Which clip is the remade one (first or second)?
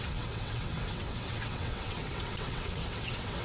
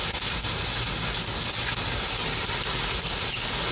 first